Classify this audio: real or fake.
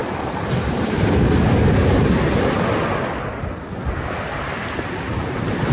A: real